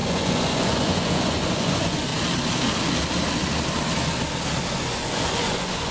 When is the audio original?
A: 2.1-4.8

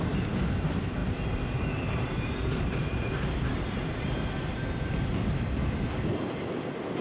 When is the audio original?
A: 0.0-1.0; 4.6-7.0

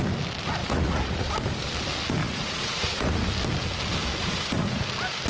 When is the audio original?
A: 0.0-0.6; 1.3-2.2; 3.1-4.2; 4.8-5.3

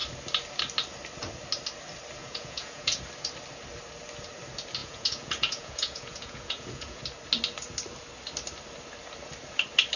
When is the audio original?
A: 0.0-2.2; 3.0-4.8; 7.0-10.0

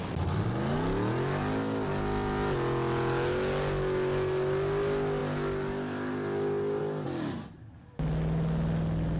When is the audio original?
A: 0.0-9.2

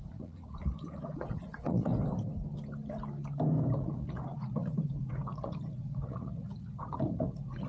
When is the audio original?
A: 1.9-3.8

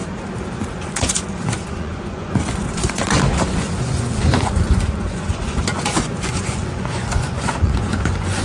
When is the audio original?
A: 0.0-0.5

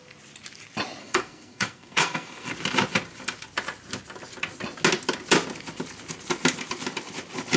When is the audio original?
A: 0.0-1.0; 2.5-7.6